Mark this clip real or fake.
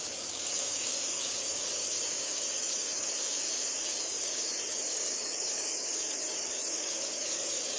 fake